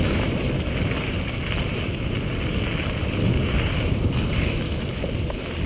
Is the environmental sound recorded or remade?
recorded